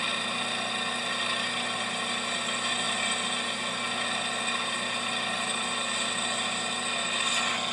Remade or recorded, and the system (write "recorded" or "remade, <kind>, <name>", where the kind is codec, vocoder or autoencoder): recorded